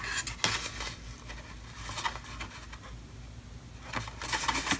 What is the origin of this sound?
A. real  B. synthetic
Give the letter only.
A